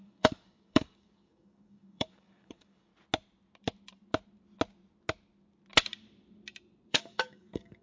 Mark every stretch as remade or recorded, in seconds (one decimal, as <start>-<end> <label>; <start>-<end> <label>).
0.0-2.9 remade; 2.9-6.9 recorded; 6.9-7.8 remade